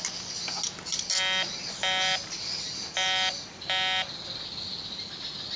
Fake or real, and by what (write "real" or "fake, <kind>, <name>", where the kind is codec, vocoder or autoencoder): real